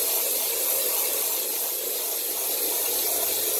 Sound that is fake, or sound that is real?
real